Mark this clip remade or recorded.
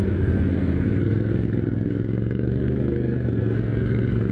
remade